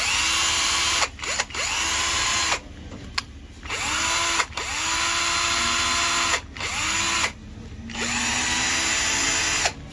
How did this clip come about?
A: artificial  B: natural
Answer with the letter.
B